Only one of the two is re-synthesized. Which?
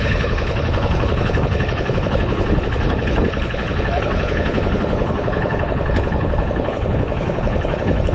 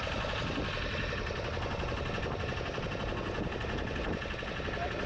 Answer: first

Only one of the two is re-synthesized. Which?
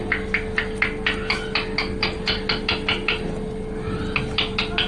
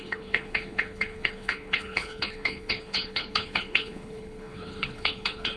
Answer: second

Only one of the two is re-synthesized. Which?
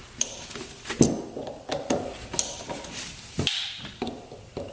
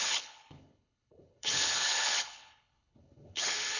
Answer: second